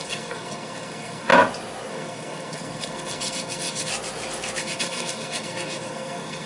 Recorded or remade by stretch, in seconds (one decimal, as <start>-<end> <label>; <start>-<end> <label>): 0.0-1.3 remade; 1.3-1.9 recorded; 1.9-3.9 remade; 3.9-4.6 recorded; 4.6-6.5 remade